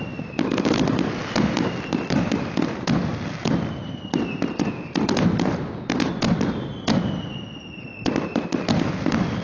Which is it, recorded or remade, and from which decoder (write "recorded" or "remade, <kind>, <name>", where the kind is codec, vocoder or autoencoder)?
remade, vocoder, BigVGAN v2